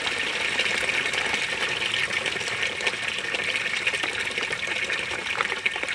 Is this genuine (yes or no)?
yes